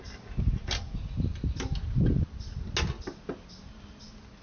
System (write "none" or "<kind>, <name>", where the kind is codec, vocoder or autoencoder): none